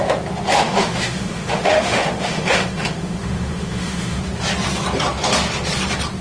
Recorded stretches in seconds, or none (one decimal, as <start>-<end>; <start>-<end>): 0.0-0.5; 4.2-6.2